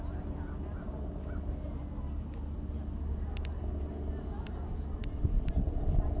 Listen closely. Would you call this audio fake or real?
real